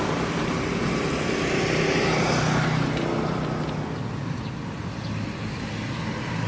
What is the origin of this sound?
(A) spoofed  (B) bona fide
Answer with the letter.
B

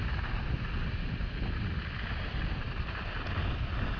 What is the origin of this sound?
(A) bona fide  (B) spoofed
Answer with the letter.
A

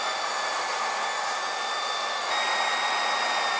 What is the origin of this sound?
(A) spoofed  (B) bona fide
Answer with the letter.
B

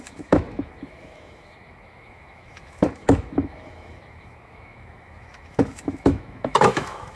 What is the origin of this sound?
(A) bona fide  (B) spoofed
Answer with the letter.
B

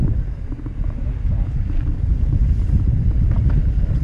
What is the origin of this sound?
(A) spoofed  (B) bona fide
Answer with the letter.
B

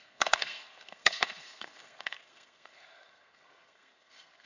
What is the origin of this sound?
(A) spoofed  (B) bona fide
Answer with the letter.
A